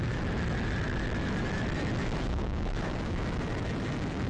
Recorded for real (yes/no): no